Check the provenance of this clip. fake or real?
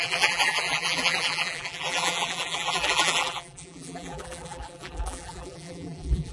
fake